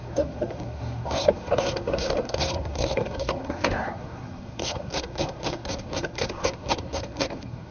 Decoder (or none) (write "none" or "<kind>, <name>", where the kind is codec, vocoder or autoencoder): codec, SNAC